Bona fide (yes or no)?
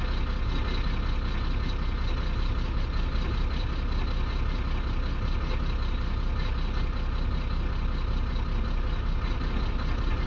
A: yes